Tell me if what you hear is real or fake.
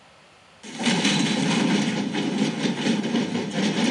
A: real